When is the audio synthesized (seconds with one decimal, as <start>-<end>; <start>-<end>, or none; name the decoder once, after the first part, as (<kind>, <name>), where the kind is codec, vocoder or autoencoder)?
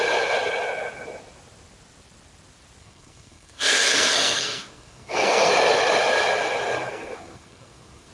2.8-5.5 (codec, SNAC); 6.9-8.1